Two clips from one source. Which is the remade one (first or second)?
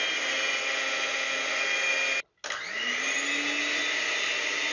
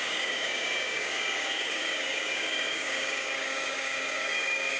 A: second